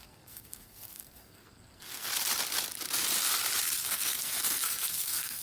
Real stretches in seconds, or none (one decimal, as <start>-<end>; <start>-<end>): 2.1-3.8